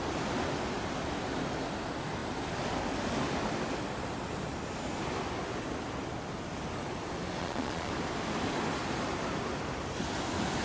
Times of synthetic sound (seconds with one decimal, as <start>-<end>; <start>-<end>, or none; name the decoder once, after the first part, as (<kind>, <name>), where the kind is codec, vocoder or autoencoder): 7.4-7.9 (vocoder, Vocos)